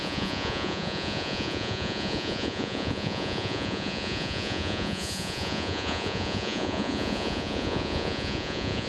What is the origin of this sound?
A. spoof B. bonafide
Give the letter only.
A